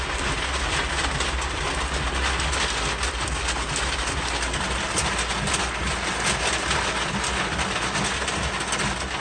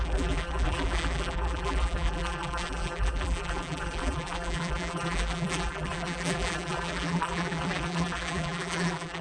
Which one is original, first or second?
first